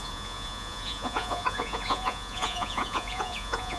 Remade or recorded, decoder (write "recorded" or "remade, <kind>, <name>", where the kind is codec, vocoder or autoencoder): remade, vocoder, Vocos